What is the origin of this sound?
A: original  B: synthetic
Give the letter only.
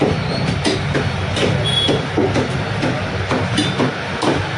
A